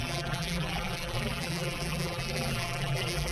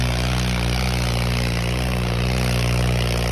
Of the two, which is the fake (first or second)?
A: first